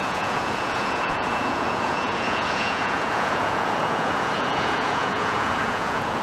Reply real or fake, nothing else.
fake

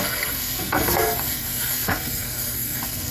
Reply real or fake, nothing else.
fake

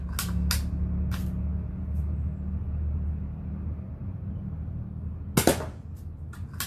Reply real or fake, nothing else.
real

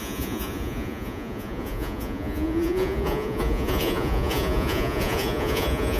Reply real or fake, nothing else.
fake